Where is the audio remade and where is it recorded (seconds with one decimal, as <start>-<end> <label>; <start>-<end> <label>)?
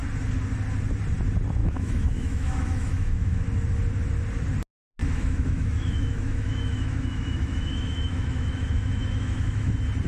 0.0-1.6 recorded; 1.6-3.4 remade; 3.4-5.0 recorded; 5.0-9.7 remade; 9.7-10.1 recorded